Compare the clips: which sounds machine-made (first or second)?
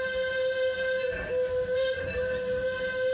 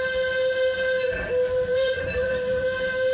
second